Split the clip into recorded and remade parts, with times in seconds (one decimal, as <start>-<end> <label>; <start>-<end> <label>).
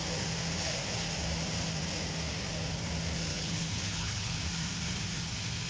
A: 0.0-3.3 recorded; 3.3-4.4 remade; 4.4-5.7 recorded